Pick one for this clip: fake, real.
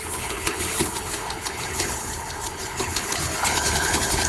fake